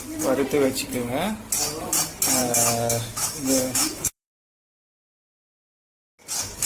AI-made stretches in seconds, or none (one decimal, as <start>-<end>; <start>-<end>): 2.4-4.3